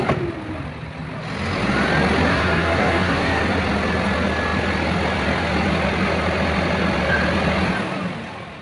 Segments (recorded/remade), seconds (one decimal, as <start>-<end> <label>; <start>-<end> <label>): 0.0-2.3 recorded; 2.3-3.4 remade; 3.4-8.6 recorded